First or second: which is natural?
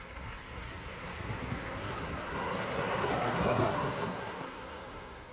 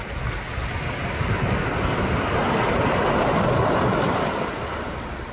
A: second